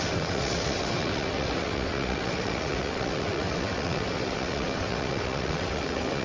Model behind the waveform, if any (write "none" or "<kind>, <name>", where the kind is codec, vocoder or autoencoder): vocoder, WaveNeXt